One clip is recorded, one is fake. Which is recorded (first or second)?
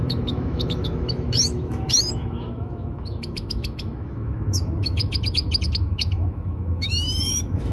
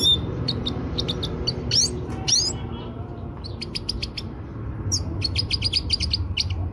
second